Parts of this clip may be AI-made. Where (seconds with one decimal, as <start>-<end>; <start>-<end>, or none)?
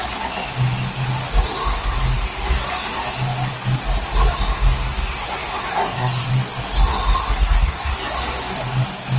5.7-6.3; 7.2-7.9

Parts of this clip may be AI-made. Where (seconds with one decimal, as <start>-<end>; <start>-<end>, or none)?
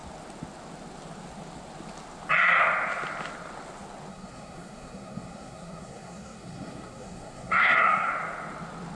4.1-8.1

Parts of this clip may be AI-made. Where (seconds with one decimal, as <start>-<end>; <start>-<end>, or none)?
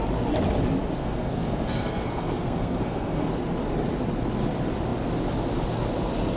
1.0-3.3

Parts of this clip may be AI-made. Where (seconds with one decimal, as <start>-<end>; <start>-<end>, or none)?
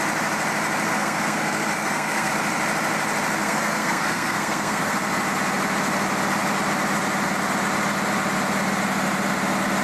0.9-2.3; 3.4-4.9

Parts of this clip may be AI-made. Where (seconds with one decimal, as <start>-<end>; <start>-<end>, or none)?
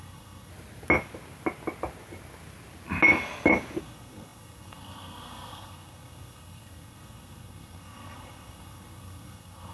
0.0-0.5; 3.8-9.7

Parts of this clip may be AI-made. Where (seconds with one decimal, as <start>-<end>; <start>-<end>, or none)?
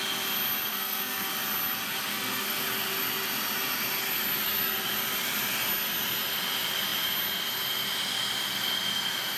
0.7-1.3; 2.1-2.6